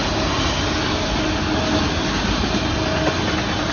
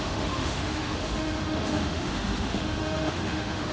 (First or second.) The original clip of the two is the first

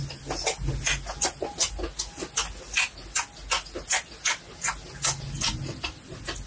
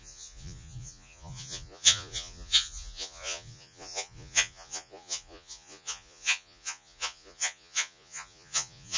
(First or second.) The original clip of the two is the first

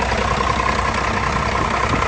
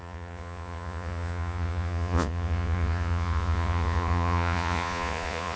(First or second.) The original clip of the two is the first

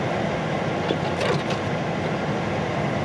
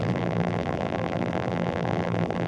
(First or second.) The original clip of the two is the first